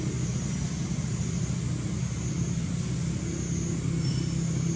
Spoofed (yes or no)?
no